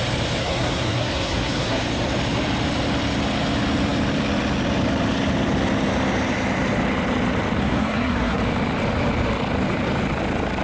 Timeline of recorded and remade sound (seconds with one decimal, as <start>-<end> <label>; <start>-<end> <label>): 0.0-0.4 recorded; 0.4-1.8 remade; 1.8-7.6 recorded; 7.6-8.4 remade; 8.4-10.6 recorded